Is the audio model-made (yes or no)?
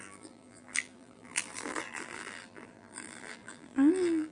yes